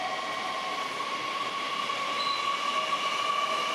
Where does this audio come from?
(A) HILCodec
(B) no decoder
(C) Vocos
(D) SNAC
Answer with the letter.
B